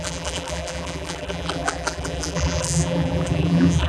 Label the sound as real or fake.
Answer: fake